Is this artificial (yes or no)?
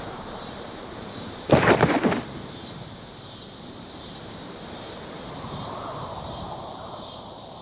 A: yes